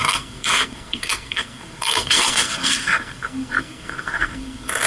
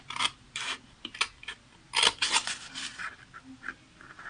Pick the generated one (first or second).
first